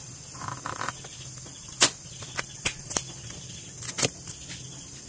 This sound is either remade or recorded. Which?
recorded